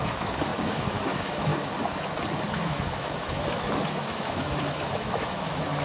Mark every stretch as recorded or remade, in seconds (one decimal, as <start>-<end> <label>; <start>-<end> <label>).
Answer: 0.0-1.5 remade; 1.5-2.5 recorded; 2.5-5.8 remade